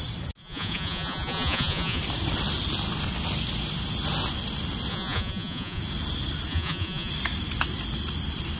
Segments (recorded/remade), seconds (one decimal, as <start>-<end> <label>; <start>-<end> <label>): 0.0-0.4 recorded; 0.4-2.0 remade; 2.0-4.9 recorded; 4.9-5.8 remade; 5.8-6.5 recorded; 6.5-7.1 remade; 7.1-8.6 recorded